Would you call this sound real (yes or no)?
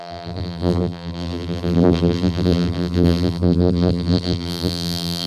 no